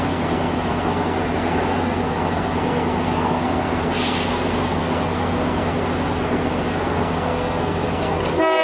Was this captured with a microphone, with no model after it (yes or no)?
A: no